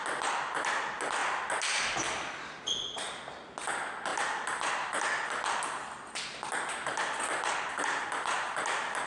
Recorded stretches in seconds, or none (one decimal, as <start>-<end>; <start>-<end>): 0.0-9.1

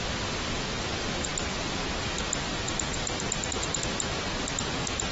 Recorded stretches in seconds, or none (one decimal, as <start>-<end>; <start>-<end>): 0.0-5.1

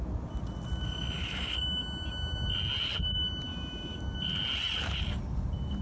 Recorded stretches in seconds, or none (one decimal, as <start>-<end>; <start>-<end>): 0.0-5.8